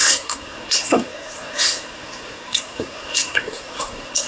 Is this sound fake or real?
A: fake